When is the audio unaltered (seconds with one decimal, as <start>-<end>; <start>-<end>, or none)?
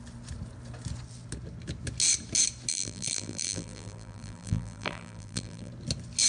0.0-2.7; 5.7-6.3